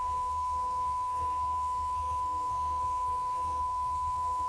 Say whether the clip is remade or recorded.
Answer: remade